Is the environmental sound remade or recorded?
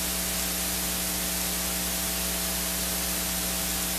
recorded